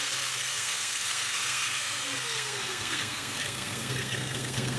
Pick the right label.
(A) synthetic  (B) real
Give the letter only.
A